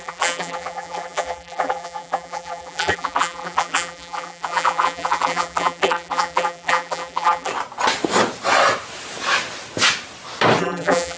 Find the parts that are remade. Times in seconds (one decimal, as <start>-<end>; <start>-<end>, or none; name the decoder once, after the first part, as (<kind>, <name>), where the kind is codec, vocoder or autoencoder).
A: 0.0-7.5 (vocoder, BigVGAN v2); 10.6-11.2